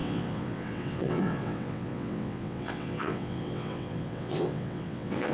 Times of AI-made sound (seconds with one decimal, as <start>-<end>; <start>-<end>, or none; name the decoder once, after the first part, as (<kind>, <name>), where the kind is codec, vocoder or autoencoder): 0.0-5.3 (vocoder, WaveNeXt)